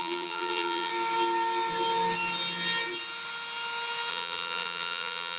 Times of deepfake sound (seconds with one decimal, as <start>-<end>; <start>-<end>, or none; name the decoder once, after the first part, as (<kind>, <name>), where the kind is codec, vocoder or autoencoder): 0.0-0.9 (vocoder, BigVGAN v2); 4.1-5.4